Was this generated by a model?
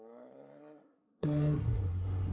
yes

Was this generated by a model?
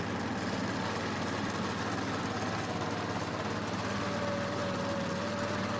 no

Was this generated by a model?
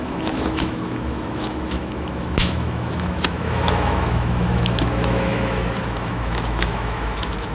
yes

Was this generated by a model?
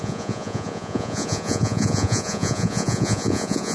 yes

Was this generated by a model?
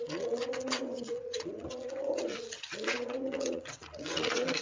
yes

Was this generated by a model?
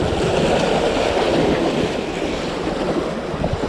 no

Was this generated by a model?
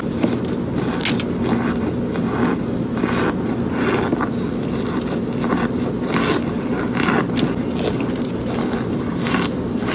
no